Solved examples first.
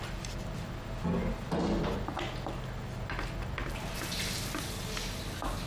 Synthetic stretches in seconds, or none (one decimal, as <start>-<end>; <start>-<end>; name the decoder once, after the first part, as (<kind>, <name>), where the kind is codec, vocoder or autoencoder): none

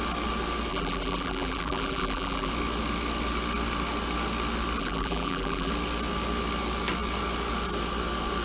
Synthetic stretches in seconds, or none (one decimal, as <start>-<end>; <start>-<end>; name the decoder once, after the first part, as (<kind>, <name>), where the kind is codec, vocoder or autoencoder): 0.7-2.5 (vocoder, BigVGAN v2); 4.8-5.7

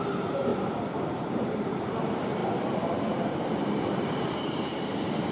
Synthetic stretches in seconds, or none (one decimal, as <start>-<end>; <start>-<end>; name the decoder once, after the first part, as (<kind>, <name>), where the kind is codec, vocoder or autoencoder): 0.0-0.5 (vocoder, BigVGAN v2); 1.0-5.3

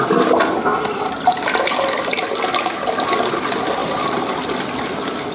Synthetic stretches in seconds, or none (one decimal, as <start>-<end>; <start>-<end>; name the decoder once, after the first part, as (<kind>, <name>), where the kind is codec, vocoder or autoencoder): 0.7-1.2 (vocoder, BigVGAN v2); 3.8-4.4

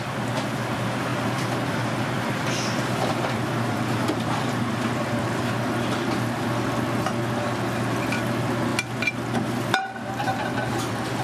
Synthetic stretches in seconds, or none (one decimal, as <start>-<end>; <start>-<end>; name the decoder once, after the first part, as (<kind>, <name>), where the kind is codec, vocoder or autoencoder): 1.1-5.5 (vocoder, BigVGAN v2); 10.3-11.2

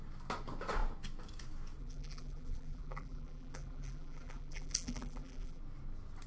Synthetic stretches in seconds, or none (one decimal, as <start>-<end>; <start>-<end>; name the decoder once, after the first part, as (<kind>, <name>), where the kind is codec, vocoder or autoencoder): 1.8-5.6 (vocoder, BigVGAN v2)

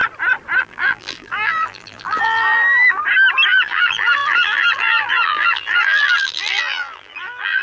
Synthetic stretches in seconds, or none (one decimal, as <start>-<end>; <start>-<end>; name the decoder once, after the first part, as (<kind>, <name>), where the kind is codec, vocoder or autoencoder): 0.6-3.0 (vocoder, BigVGAN v2); 3.5-7.6